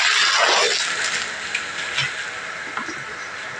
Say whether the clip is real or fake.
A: real